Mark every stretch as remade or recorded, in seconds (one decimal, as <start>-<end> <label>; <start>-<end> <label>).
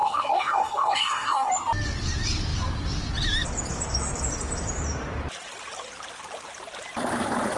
0.0-1.5 remade; 1.5-7.6 recorded